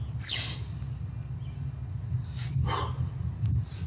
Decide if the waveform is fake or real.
real